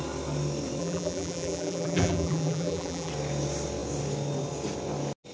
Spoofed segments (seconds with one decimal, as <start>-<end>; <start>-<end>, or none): 0.8-3.1